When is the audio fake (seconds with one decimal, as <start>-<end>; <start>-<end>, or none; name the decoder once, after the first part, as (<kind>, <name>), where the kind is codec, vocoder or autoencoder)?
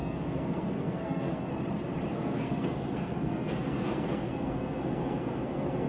0.0-1.5 (codec, SNAC); 2.1-5.9